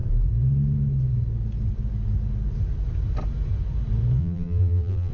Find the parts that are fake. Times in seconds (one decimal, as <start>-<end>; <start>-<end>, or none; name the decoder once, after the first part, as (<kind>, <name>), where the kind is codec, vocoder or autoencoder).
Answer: 4.2-5.1 (vocoder, BigVGAN v2)